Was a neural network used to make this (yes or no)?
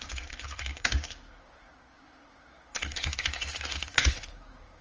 yes